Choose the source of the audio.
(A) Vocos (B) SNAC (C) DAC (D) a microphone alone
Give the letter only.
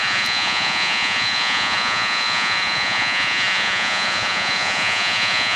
A